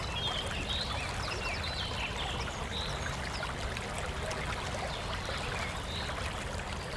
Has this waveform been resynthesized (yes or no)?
no